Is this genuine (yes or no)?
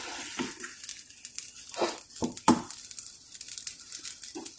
yes